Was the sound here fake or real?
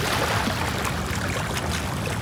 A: real